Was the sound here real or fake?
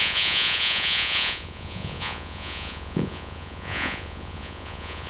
fake